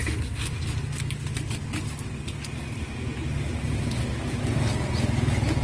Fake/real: real